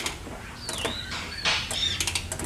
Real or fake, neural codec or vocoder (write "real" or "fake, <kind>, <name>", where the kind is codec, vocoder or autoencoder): real